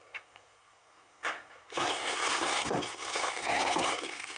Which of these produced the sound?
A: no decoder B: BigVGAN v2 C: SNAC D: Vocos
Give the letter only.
C